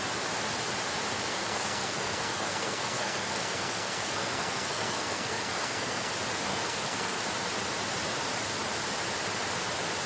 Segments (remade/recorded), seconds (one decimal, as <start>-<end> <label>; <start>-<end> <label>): 0.0-1.3 recorded; 1.3-6.1 remade; 6.1-6.5 recorded; 6.5-7.2 remade; 7.2-10.1 recorded